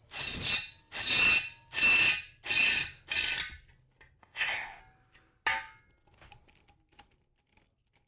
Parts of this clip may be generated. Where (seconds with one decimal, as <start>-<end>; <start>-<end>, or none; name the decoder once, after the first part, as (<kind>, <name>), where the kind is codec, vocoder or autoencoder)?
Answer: 4.2-4.8 (codec, ZipCodec)